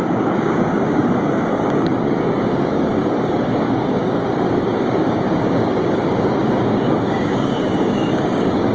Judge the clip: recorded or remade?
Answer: remade